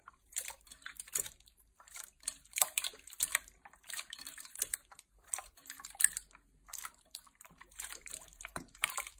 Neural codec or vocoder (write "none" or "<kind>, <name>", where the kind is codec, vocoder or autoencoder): vocoder, BigVGAN v2